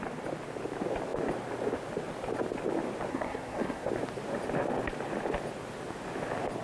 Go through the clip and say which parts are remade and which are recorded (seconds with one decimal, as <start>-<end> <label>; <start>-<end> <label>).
0.0-3.1 recorded; 3.1-3.9 remade; 3.9-6.6 recorded